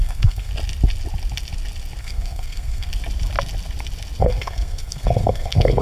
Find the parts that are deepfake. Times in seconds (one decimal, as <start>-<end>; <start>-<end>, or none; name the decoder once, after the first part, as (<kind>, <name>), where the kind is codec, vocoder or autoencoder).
0.0-0.5 (codec, SNAC); 2.0-2.9; 4.2-5.8